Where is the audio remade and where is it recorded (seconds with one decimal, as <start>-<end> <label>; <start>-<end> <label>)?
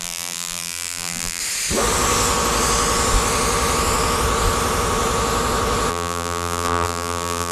0.0-1.4 remade; 1.4-5.9 recorded; 5.9-7.5 remade